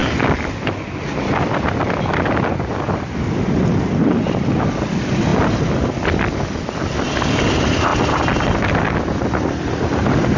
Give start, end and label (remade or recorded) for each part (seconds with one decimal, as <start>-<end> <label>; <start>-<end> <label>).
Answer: 0.0-5.3 recorded; 5.3-7.4 remade; 7.4-10.4 recorded

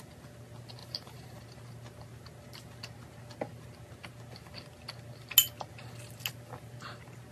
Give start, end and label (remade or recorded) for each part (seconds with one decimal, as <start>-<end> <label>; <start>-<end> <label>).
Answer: 0.0-0.8 recorded; 0.8-1.4 remade; 1.4-7.3 recorded

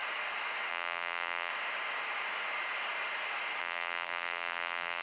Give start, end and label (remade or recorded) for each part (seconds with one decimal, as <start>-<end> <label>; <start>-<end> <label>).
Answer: 0.0-0.7 recorded; 0.7-1.5 remade; 1.5-3.6 recorded; 3.6-5.0 remade

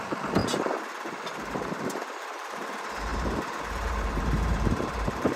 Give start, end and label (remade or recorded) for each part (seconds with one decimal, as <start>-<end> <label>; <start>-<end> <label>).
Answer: 0.0-0.4 remade; 0.4-2.2 recorded; 2.2-5.4 remade

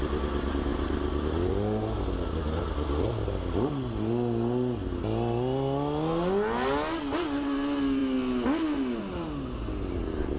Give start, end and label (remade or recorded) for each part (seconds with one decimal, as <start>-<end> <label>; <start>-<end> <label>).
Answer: 0.0-10.4 recorded

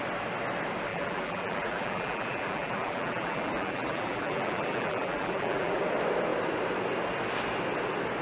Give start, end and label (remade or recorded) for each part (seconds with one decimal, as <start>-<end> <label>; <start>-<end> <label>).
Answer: 0.0-0.9 recorded; 0.9-5.8 remade; 5.8-8.2 recorded

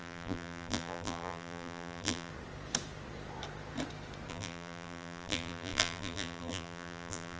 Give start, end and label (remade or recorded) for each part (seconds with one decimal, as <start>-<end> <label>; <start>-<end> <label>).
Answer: 0.0-2.3 remade; 2.3-4.3 recorded; 4.3-7.4 remade

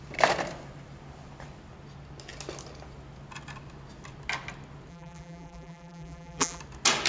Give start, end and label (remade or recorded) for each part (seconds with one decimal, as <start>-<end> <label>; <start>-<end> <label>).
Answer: 0.0-4.9 recorded; 4.9-6.6 remade; 6.6-7.1 recorded